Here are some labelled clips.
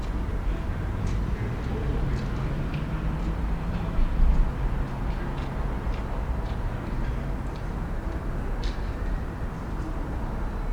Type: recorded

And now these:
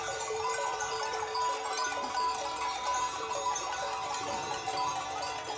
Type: remade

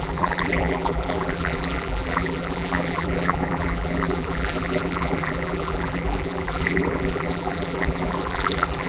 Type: remade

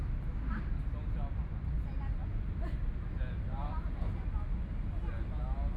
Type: recorded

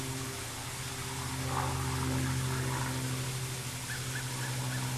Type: recorded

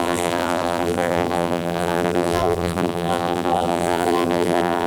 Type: remade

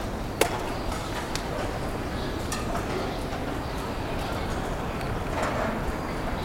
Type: recorded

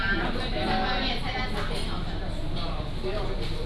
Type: remade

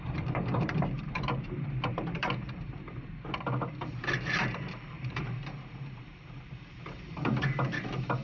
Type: remade